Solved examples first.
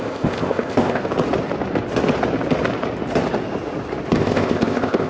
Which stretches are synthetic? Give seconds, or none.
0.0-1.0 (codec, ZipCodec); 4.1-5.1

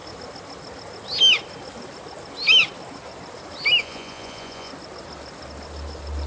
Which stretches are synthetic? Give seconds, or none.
3.8-4.7 (vocoder, Vocos)